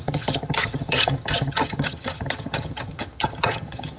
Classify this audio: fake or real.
fake